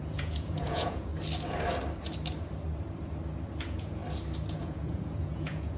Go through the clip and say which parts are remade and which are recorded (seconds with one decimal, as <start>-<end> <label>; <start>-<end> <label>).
0.0-1.1 remade; 1.1-3.6 recorded; 3.6-4.0 remade; 4.0-4.5 recorded; 4.5-5.8 remade